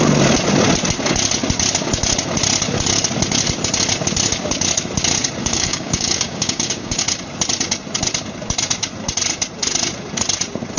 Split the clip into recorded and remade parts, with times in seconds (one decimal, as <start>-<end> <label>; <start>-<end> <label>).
0.0-5.4 recorded; 5.4-7.0 remade; 7.0-10.8 recorded